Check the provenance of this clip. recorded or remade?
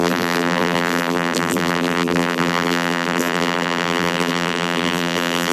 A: remade